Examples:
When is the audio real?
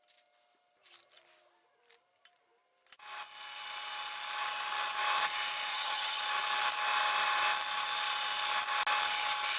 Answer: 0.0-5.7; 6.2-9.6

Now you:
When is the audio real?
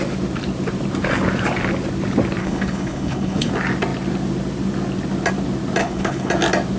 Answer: 0.0-2.4; 3.5-5.8; 6.3-6.8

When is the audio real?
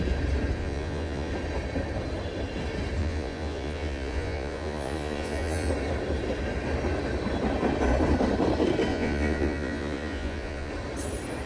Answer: 0.0-0.6; 1.3-3.0; 5.7-8.9; 10.7-11.5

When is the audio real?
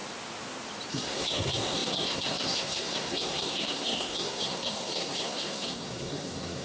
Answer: 0.0-0.9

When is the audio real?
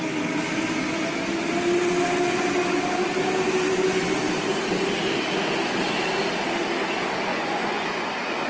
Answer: 0.0-7.3; 8.1-8.5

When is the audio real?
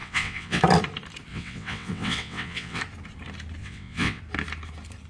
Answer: 0.6-1.3; 2.8-3.6; 4.2-5.1